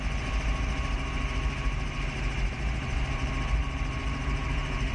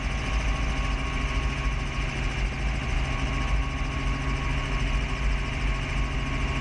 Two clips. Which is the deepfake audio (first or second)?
first